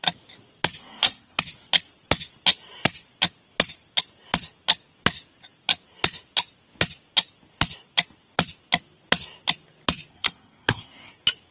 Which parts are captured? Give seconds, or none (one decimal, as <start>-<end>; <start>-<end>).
0.0-0.8; 1.4-10.1; 11.1-11.5